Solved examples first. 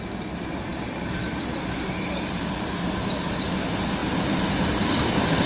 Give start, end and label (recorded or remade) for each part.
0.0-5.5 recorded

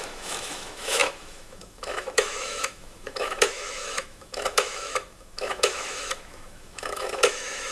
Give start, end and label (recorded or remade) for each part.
0.0-7.7 remade

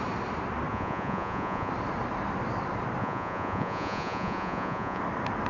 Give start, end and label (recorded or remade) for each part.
0.0-0.7 recorded; 0.7-1.7 remade; 1.7-3.0 recorded; 3.0-5.0 remade; 5.0-5.5 recorded

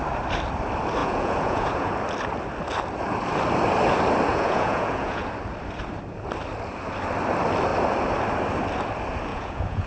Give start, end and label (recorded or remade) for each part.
0.0-1.0 recorded; 1.0-1.9 remade; 1.9-4.3 recorded; 4.3-5.3 remade; 5.3-9.3 recorded; 9.3-9.9 remade

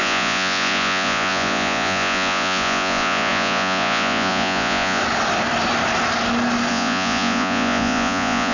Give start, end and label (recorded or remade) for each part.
0.0-5.0 remade; 5.0-6.7 recorded; 6.7-8.5 remade

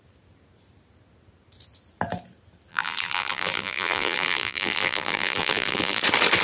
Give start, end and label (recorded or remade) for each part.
0.0-2.7 recorded; 2.7-6.0 remade; 6.0-6.4 recorded

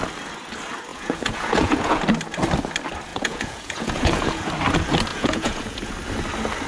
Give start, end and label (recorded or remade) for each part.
0.0-0.9 recorded; 0.9-2.0 remade; 2.0-3.1 recorded; 3.1-4.5 remade; 4.5-5.1 recorded; 5.1-5.9 remade; 5.9-6.7 recorded

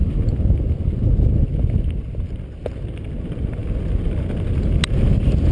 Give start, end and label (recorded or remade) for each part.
0.0-5.5 recorded